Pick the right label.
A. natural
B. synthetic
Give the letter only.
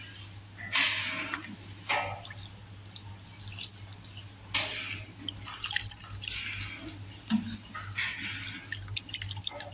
A